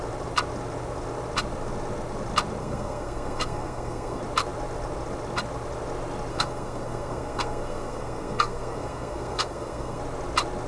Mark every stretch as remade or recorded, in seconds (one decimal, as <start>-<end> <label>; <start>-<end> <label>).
0.0-2.6 recorded; 2.6-4.2 remade; 4.2-6.3 recorded; 6.3-10.0 remade; 10.0-10.7 recorded